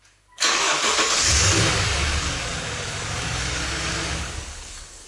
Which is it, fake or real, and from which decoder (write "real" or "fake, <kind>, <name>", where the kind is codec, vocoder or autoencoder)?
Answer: fake, codec, DAC